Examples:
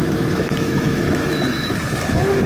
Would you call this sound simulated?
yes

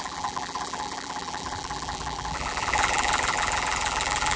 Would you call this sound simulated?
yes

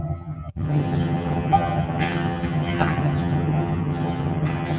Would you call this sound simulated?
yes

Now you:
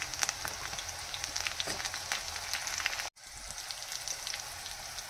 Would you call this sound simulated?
no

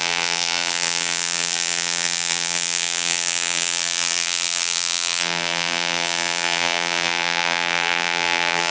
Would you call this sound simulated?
yes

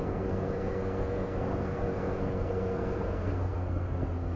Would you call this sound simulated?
yes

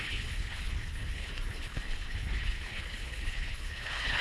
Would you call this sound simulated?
yes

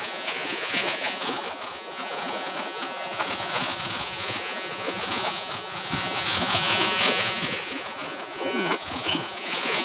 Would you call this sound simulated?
yes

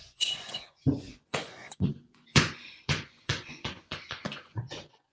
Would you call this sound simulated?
yes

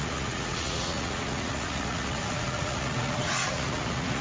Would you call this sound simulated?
yes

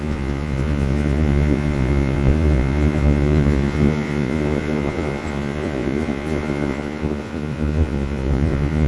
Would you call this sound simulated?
yes